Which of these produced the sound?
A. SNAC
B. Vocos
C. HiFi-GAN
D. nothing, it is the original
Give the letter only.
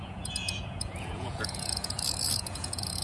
B